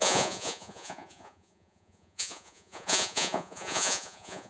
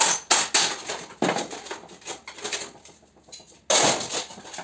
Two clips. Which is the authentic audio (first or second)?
second